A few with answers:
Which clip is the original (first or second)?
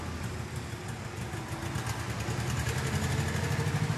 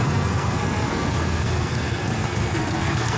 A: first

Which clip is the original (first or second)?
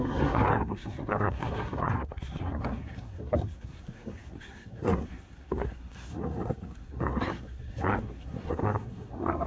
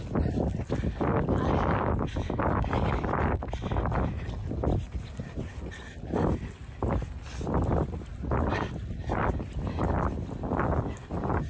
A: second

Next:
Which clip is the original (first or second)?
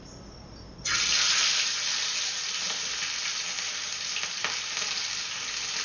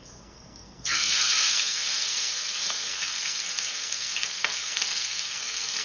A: first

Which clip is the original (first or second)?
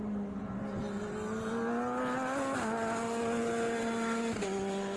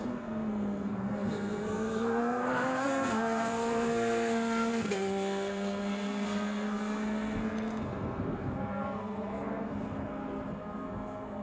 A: first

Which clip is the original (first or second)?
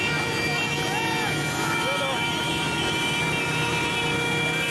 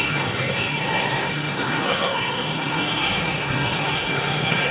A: first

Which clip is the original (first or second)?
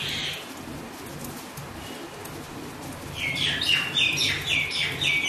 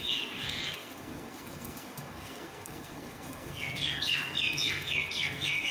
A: first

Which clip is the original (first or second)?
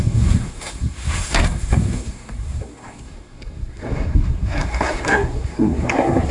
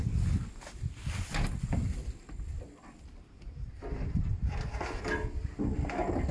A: second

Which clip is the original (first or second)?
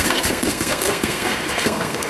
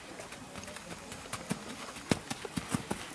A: second